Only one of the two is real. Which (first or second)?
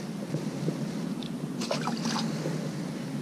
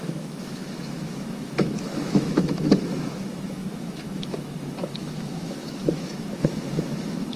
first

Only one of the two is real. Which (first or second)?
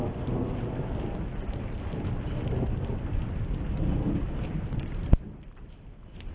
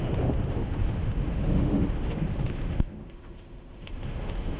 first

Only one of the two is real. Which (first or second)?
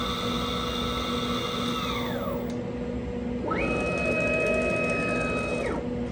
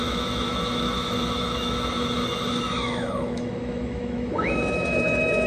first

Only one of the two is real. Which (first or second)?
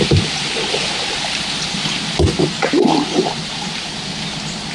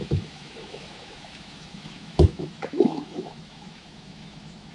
first